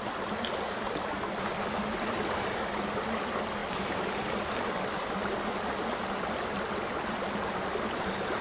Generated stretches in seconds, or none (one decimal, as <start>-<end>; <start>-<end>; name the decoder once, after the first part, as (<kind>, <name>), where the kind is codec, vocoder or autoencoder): none